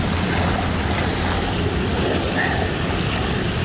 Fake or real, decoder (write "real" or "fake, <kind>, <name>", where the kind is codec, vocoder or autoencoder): real